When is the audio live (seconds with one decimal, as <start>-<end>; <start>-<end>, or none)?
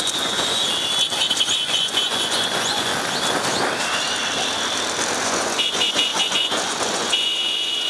0.6-1.3; 2.9-5.2